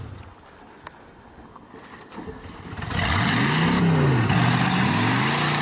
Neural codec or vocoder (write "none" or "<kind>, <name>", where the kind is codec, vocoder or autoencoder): none